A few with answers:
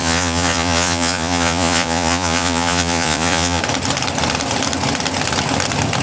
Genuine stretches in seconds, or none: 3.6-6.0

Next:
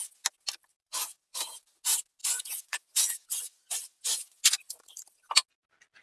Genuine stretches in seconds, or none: 0.0-0.7; 1.4-2.2; 4.4-6.0

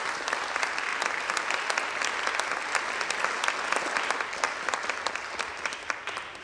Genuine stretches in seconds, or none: 0.0-6.4